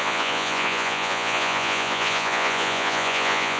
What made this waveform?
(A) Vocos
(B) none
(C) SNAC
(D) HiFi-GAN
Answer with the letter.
A